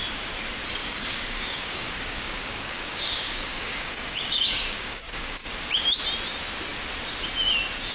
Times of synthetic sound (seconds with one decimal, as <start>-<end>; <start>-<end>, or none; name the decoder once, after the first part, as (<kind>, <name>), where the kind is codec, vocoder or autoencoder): 0.8-5.5 (codec, DAC)